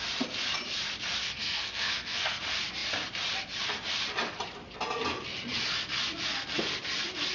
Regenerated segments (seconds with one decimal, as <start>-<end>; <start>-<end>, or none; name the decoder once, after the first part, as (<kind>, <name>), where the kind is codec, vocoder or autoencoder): 1.2-2.4 (codec, SNAC)